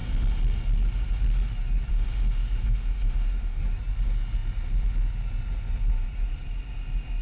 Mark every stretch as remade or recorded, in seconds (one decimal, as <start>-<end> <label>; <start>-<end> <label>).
0.0-1.9 recorded; 1.9-3.6 remade; 3.6-7.2 recorded